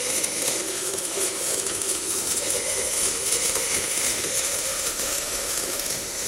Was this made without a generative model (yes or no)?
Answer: no